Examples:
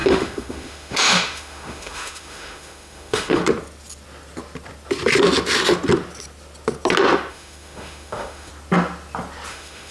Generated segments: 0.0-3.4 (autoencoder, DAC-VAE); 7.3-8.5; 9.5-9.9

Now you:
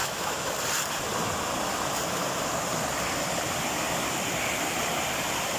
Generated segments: 0.0-0.5 (autoencoder, DAC-VAE)

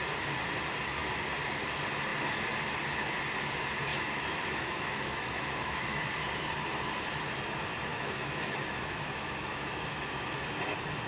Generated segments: 3.9-6.0 (autoencoder, DAC-VAE); 7.9-10.5

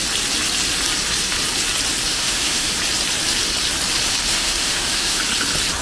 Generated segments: 2.1-2.7 (autoencoder, DAC-VAE); 4.3-5.2

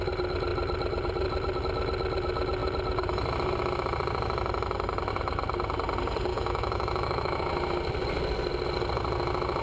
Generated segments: 6.3-7.5 (autoencoder, DAC-VAE)

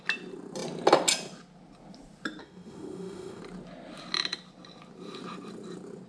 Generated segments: 2.4-3.4 (autoencoder, DAC-VAE)

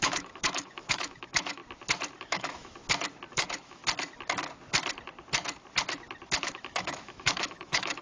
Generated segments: 0.0-1.6 (autoencoder, DAC-VAE); 2.2-2.8; 3.3-3.8; 6.4-8.0

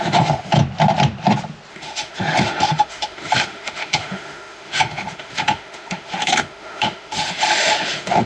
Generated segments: 0.0-0.6 (autoencoder, DAC-VAE); 1.7-8.3